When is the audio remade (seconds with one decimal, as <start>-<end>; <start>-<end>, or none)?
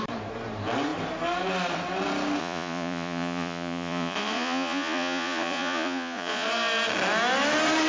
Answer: 2.4-6.5